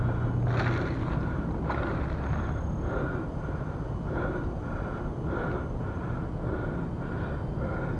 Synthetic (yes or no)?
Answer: no